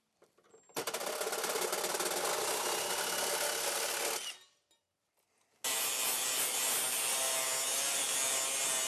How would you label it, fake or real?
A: real